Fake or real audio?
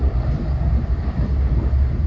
fake